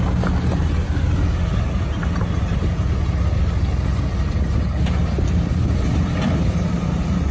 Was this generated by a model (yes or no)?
no